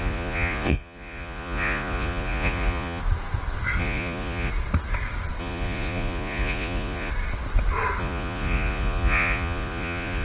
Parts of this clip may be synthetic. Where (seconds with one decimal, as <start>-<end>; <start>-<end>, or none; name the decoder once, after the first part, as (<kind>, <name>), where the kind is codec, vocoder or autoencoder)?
0.0-3.0 (vocoder, Vocos); 3.8-4.5; 5.4-7.1; 8.0-10.2